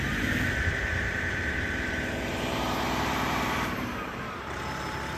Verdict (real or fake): fake